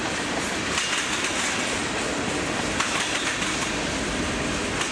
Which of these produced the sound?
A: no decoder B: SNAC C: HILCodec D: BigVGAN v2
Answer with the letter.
A